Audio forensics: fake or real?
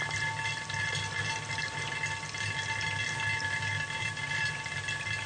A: real